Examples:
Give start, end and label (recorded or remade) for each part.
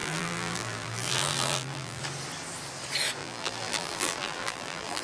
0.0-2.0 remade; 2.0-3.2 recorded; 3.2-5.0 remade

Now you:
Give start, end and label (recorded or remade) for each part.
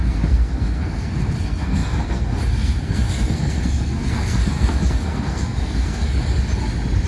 0.0-6.2 remade; 6.2-7.1 recorded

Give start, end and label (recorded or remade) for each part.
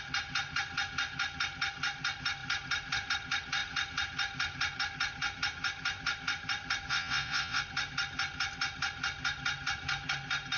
0.0-6.9 recorded; 6.9-7.6 remade; 7.6-10.6 recorded